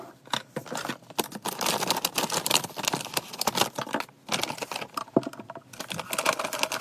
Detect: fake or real real